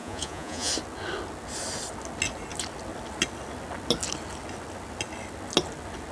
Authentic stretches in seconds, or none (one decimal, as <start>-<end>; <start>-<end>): 0.7-6.1